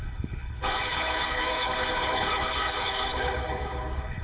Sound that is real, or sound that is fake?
fake